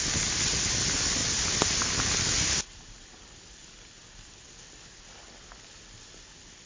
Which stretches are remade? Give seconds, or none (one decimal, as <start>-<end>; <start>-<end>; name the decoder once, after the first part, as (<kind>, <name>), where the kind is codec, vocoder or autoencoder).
none